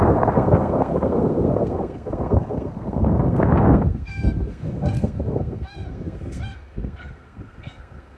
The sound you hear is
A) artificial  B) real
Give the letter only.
A